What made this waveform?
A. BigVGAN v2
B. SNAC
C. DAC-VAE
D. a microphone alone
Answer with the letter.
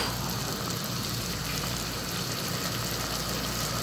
D